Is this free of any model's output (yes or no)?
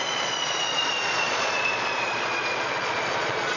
no